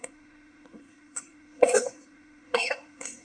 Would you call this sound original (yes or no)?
no